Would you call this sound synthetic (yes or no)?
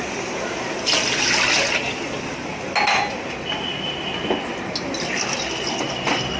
no